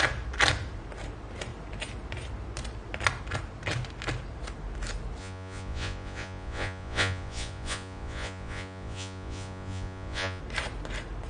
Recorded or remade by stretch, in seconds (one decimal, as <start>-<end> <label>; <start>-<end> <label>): 0.0-5.2 recorded; 5.2-10.4 remade; 10.4-11.3 recorded